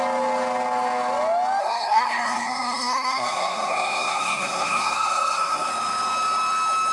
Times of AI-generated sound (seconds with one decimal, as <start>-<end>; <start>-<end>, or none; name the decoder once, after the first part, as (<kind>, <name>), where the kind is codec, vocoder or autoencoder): 1.6-5.7 (codec, SNAC)